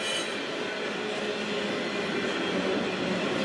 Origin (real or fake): real